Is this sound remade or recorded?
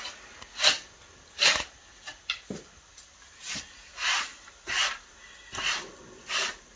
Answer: recorded